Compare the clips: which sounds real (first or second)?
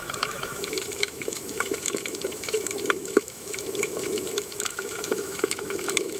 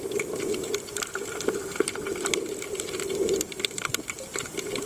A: second